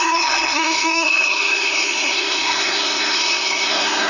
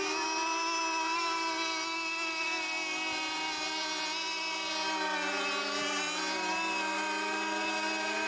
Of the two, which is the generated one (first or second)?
first